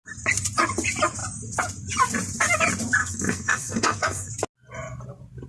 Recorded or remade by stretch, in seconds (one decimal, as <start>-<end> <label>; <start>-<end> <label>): 0.0-3.0 recorded; 3.0-4.3 remade; 4.3-5.5 recorded

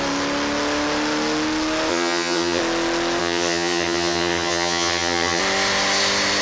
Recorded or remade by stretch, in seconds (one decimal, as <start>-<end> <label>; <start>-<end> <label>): 0.0-1.9 recorded; 1.9-2.6 remade; 2.6-3.2 recorded; 3.2-5.4 remade; 5.4-6.4 recorded